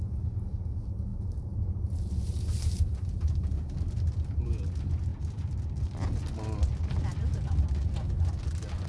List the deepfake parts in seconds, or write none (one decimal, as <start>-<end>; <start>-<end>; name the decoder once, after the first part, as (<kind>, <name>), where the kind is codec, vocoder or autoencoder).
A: 1.1-3.7 (vocoder, BigVGAN v2); 5.1-5.6